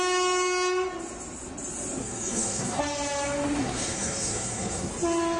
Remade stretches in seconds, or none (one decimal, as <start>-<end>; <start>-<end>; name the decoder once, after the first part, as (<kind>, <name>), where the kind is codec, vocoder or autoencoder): 2.0-2.8 (codec, SNAC); 3.6-4.9